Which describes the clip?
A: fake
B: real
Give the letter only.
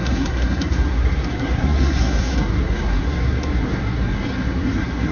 A